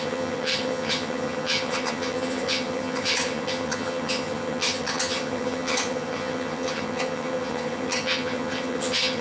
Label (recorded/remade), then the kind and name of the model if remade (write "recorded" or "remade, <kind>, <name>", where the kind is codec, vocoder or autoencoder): remade, vocoder, HiFi-GAN